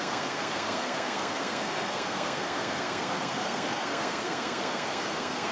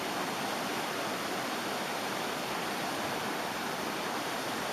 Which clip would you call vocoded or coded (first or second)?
first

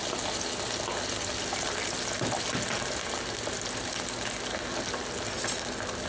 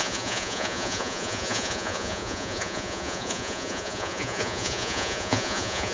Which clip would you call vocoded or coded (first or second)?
second